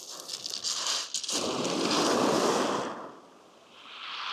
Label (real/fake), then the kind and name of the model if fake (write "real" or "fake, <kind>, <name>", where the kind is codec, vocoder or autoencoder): real